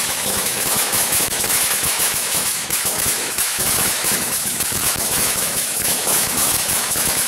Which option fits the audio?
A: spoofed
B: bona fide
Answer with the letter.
A